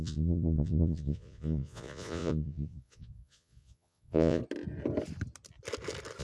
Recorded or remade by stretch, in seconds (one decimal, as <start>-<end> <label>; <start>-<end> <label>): 0.0-4.4 remade; 4.4-6.2 recorded